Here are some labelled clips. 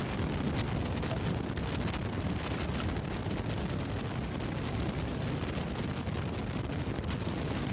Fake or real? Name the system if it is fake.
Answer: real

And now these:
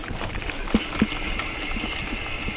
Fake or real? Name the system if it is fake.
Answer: real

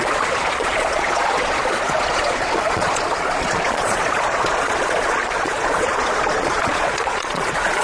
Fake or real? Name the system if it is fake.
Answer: fake, vocoder, Vocos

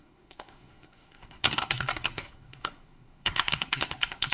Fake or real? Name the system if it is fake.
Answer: fake, codec, SNAC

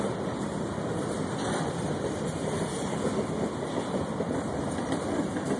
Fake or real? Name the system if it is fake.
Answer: fake, vocoder, BigVGAN v2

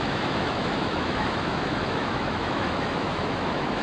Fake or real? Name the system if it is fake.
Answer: fake, autoencoder, DAC-VAE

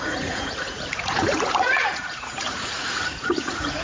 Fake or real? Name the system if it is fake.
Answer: fake, vocoder, Vocos